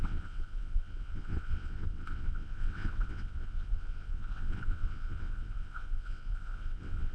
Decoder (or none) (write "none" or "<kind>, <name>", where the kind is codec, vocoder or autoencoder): vocoder, WaveNeXt